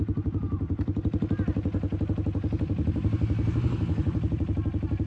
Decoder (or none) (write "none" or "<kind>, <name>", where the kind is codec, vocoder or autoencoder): none